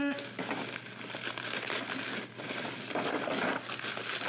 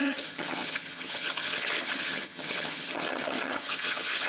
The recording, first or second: first